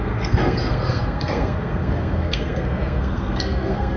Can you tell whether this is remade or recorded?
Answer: remade